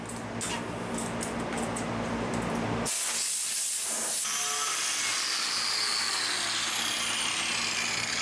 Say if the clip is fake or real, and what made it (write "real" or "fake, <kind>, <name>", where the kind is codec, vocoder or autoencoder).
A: real